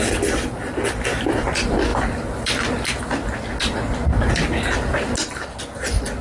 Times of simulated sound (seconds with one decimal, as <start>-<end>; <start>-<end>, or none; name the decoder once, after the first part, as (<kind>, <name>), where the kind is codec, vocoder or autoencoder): none